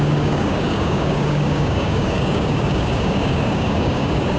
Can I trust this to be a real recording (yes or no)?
no